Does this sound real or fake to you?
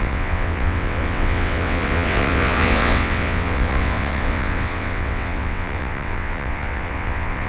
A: fake